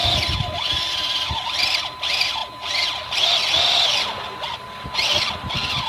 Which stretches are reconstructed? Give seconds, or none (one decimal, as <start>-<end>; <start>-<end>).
none